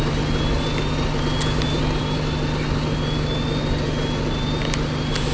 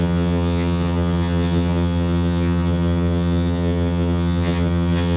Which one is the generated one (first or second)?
second